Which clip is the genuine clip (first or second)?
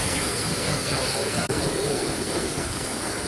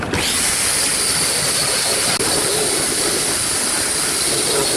second